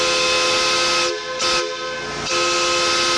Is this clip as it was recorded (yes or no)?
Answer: yes